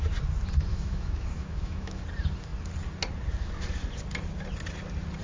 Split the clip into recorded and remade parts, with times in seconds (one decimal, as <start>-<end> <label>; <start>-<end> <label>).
0.0-0.7 recorded; 0.7-2.0 remade; 2.0-5.2 recorded